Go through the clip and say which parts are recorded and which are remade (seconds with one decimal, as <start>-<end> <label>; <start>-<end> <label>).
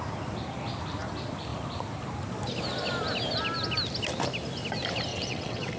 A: 0.0-5.1 recorded; 5.1-5.8 remade